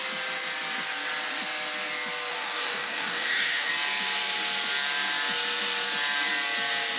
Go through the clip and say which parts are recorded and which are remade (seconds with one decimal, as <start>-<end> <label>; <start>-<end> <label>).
0.0-2.3 recorded; 2.3-3.7 remade; 3.7-7.0 recorded